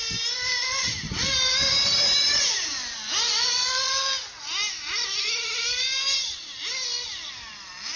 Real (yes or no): no